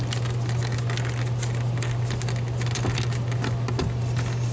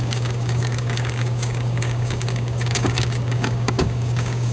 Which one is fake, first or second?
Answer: second